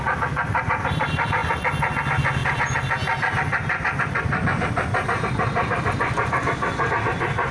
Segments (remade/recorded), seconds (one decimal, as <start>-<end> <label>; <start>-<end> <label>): 0.0-7.5 recorded

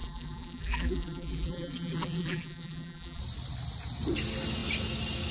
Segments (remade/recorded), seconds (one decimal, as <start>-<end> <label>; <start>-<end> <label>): 0.0-3.2 remade; 3.2-5.3 recorded

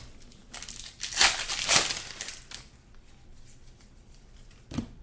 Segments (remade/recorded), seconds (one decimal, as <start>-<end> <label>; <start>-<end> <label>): 0.0-5.0 recorded

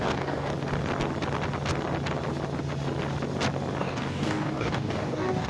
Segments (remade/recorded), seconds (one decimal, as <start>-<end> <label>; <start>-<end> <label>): 0.0-0.5 remade; 0.5-3.8 recorded; 3.8-5.5 remade

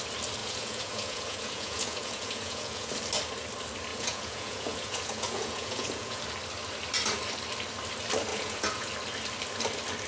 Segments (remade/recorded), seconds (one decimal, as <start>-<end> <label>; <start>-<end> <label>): 0.0-0.4 recorded; 0.4-2.9 remade; 2.9-3.9 recorded; 3.9-6.2 remade; 6.2-8.3 recorded; 8.3-8.9 remade; 8.9-10.1 recorded

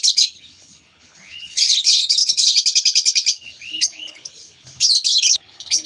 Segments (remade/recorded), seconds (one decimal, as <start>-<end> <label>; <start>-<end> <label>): 0.0-5.9 remade